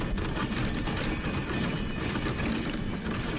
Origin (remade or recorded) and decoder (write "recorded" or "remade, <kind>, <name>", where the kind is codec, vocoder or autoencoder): recorded